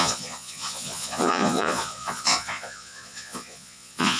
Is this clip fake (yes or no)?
yes